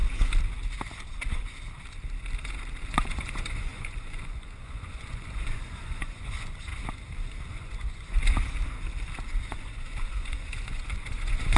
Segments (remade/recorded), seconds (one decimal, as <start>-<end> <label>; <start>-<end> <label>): 0.0-2.9 recorded; 2.9-6.7 remade; 6.7-7.5 recorded; 7.5-8.2 remade; 8.2-9.5 recorded; 9.5-11.6 remade